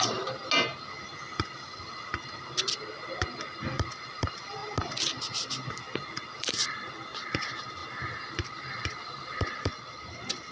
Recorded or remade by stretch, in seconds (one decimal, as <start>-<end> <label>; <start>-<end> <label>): 0.0-0.4 remade; 0.4-1.1 recorded; 1.1-4.6 remade; 4.6-5.2 recorded; 5.2-7.8 remade; 7.8-8.3 recorded; 8.3-10.5 remade